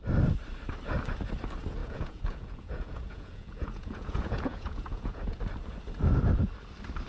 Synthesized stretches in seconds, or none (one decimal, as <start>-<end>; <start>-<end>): 1.8-5.4